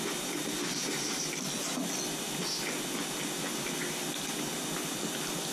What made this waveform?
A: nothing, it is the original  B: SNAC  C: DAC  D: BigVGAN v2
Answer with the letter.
A